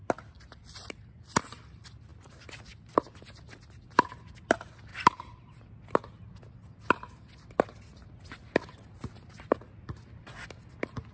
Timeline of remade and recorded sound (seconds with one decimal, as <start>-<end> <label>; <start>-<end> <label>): 0.0-4.9 recorded; 4.9-5.4 remade; 5.4-11.1 recorded